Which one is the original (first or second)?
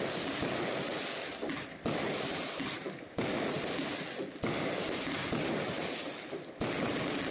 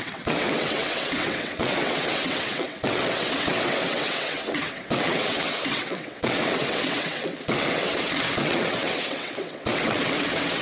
first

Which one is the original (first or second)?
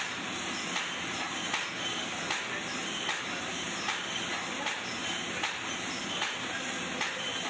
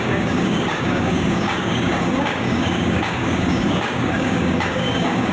first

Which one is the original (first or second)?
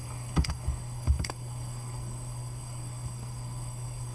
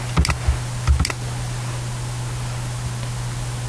second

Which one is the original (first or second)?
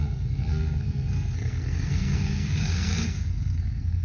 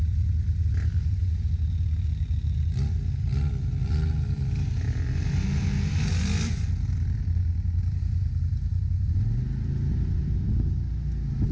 second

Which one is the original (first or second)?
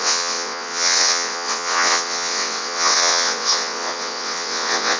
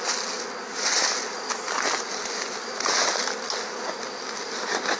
second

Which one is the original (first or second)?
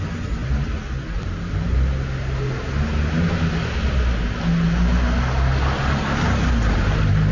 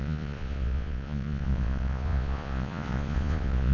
first